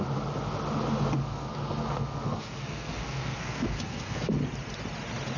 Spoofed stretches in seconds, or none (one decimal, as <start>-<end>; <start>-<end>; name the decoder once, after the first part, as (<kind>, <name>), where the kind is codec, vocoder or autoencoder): 1.2-4.4 (codec, SNAC)